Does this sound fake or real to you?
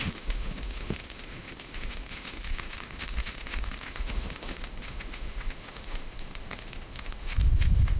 fake